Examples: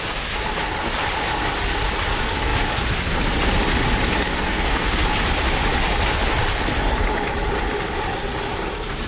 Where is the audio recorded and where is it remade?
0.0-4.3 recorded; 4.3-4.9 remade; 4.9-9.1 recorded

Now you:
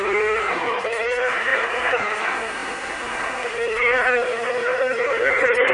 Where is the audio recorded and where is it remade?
0.0-5.7 remade

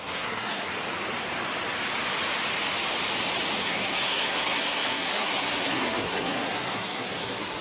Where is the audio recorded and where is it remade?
0.0-0.7 remade; 0.7-3.6 recorded; 3.6-7.6 remade

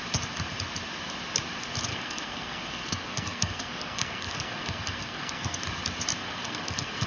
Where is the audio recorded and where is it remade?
0.0-1.9 recorded; 1.9-5.6 remade; 5.6-6.2 recorded; 6.2-7.1 remade

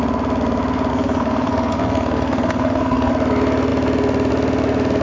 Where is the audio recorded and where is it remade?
0.0-0.9 recorded; 0.9-3.1 remade; 3.1-5.0 recorded

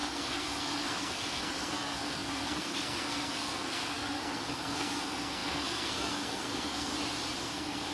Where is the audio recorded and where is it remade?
0.0-6.9 remade; 6.9-7.4 recorded; 7.4-7.9 remade

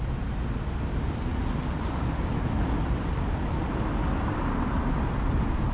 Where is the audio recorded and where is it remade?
0.0-5.7 recorded